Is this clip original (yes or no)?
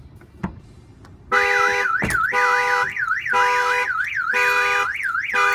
yes